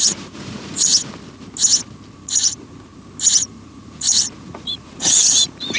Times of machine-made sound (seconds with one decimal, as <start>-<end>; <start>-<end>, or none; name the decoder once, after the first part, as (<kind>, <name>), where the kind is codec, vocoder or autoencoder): 0.0-0.9 (vocoder, Vocos); 2.1-2.9; 3.4-5.8